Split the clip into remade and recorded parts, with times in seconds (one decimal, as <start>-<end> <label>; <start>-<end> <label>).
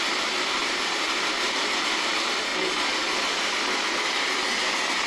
0.0-2.5 remade; 2.5-5.1 recorded